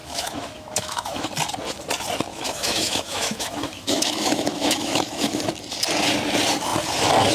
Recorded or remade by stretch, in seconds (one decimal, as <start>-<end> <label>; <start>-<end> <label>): 0.0-1.3 remade; 1.3-2.3 recorded; 2.3-5.4 remade; 5.4-7.3 recorded